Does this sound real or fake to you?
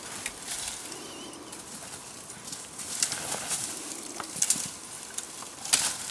real